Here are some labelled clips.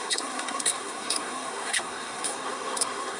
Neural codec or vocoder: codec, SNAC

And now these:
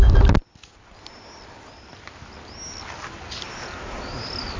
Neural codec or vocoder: none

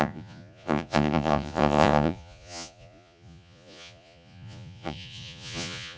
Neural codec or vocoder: vocoder, Vocos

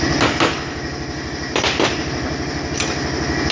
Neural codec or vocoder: none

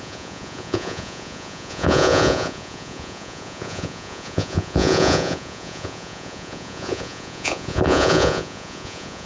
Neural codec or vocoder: vocoder, Vocos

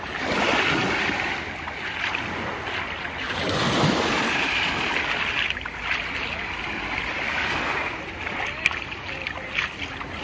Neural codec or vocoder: none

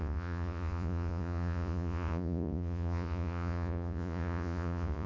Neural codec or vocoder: vocoder, Vocos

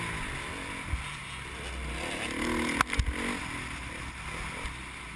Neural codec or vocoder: none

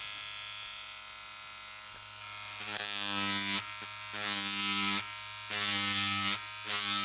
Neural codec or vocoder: none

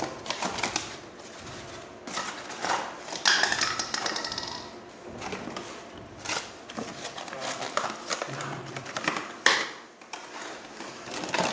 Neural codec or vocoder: none